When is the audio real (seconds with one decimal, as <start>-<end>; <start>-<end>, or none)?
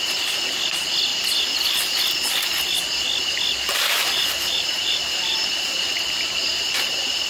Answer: 0.0-1.1; 2.0-3.7; 5.9-7.3